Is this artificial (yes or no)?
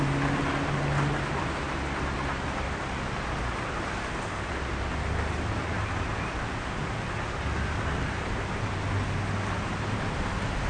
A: no